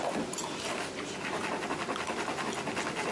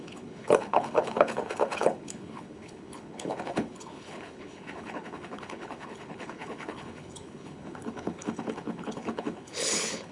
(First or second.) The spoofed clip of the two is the second